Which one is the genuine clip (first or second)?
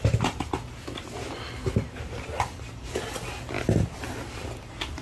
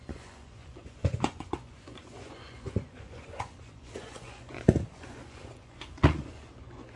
first